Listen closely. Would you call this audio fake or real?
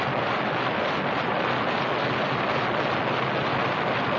real